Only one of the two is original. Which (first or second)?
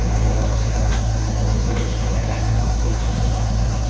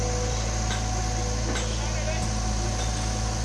second